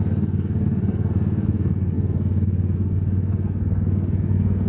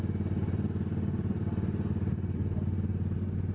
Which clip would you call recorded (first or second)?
second